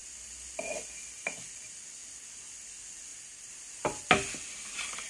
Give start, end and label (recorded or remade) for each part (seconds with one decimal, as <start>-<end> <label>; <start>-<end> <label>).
0.0-3.1 recorded; 3.1-3.6 remade; 3.6-5.1 recorded